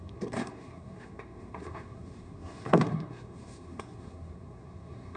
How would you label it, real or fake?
fake